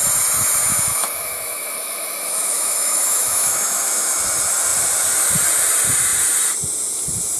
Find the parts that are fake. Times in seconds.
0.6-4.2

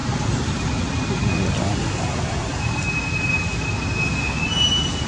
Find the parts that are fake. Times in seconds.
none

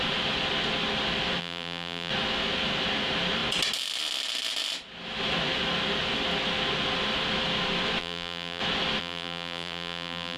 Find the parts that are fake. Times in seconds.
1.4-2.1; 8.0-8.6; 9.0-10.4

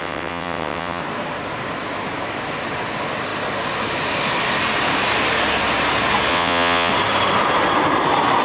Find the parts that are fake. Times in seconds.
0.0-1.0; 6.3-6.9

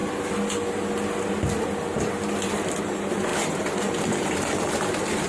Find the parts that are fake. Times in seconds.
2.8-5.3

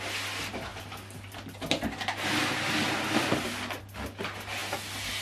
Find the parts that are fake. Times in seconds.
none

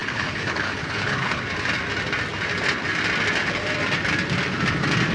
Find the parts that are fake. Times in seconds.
0.0-1.4

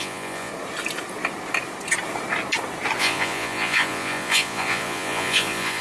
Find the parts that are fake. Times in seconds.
0.0-0.5; 3.0-5.8